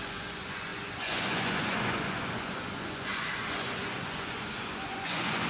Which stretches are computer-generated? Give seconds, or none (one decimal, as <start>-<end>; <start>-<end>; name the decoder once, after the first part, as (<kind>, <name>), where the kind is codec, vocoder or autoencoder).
0.0-5.5 (vocoder, Vocos)